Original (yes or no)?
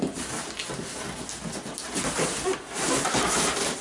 yes